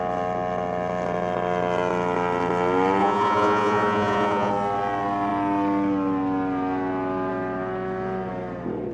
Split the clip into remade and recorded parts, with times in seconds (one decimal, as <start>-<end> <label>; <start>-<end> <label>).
0.0-3.0 recorded; 3.0-4.5 remade; 4.5-8.9 recorded